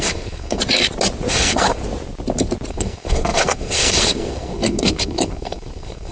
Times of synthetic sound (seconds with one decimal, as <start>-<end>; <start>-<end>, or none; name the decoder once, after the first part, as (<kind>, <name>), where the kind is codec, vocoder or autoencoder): 0.0-0.6 (codec, SNAC); 1.3-1.8; 2.7-6.1

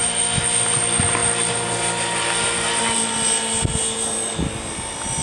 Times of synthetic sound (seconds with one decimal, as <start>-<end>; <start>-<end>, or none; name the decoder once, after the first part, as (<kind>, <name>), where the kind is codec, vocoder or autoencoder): none